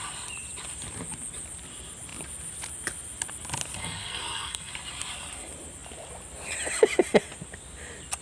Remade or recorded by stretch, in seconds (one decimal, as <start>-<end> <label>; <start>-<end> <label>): 0.0-3.8 recorded; 3.8-4.7 remade; 4.7-8.2 recorded